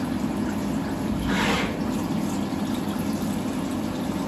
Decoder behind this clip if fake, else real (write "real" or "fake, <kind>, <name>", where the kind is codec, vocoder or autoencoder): real